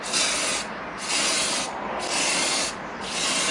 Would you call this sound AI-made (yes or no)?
no